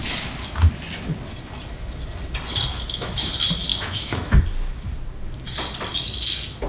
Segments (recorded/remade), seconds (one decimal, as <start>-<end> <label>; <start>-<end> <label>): 0.0-2.7 recorded; 2.7-3.3 remade; 3.3-3.7 recorded; 3.7-4.4 remade; 4.4-6.7 recorded